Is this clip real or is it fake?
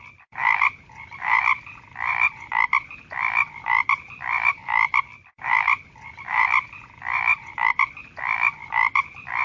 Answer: fake